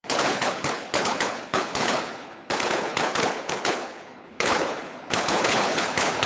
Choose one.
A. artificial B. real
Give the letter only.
A